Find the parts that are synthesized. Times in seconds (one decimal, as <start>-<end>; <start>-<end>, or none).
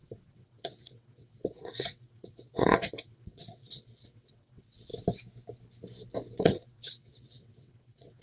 0.0-4.9; 6.4-8.2